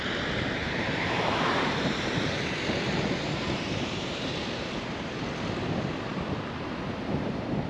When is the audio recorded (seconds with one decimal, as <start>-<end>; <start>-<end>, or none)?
0.0-0.6; 4.3-7.7

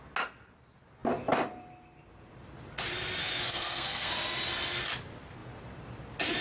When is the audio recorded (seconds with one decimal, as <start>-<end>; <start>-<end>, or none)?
0.0-3.2; 4.1-6.4

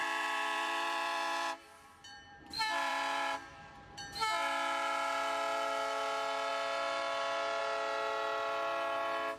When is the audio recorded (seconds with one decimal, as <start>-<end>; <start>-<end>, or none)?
4.0-9.4

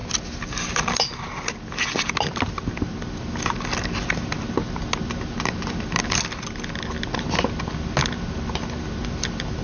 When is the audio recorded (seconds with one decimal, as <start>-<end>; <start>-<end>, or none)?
0.0-9.6